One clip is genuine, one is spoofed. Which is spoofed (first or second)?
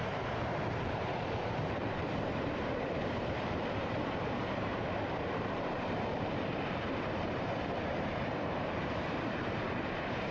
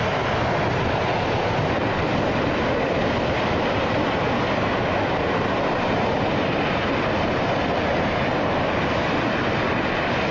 first